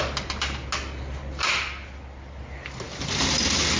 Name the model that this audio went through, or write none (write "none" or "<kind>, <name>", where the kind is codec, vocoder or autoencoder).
none